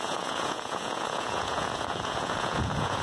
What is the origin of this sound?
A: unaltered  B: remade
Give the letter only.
B